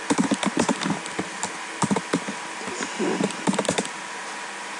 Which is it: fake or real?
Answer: real